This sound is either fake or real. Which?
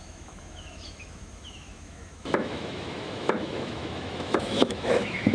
fake